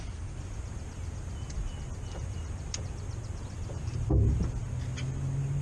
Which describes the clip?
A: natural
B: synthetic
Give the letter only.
A